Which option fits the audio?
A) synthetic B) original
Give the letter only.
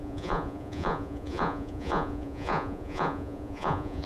A